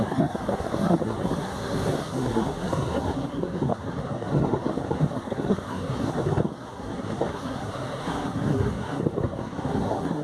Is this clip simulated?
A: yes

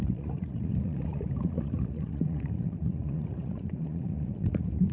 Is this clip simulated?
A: yes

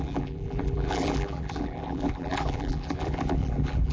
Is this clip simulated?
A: yes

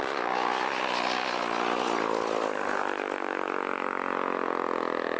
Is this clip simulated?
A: no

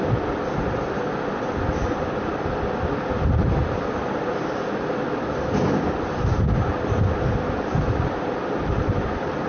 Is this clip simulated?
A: no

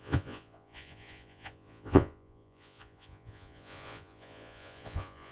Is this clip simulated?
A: yes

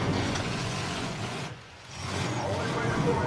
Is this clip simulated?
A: yes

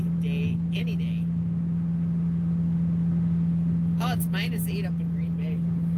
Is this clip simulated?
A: no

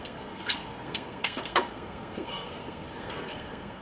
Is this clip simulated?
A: yes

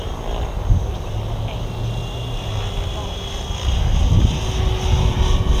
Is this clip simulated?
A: no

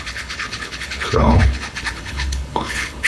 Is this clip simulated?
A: yes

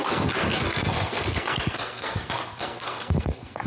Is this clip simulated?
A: yes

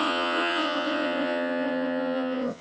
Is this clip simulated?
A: yes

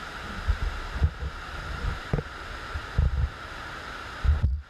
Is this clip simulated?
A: no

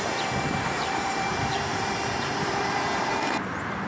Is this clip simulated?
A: yes